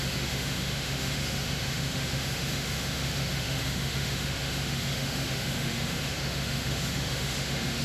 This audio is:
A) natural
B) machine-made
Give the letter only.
B